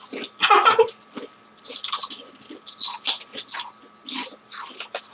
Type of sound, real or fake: real